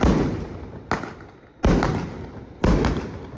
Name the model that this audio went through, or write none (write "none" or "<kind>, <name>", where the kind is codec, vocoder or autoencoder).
none